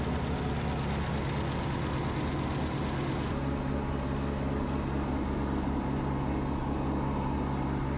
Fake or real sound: real